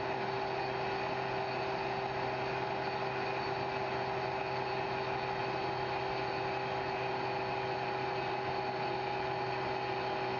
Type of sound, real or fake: real